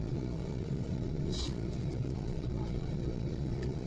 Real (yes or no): no